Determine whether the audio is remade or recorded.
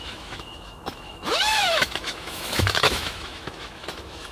remade